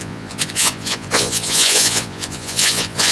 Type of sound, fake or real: fake